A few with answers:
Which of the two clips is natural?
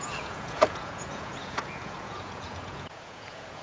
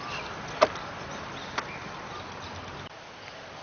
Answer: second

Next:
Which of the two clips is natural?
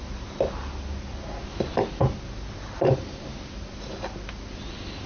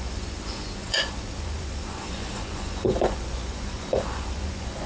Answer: first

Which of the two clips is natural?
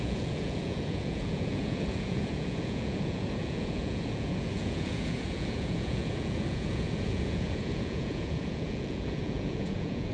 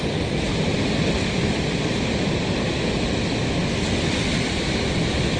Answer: second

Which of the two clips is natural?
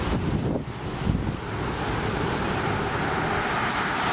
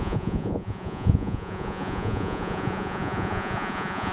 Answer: first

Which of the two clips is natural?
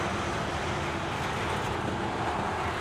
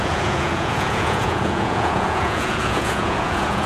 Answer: first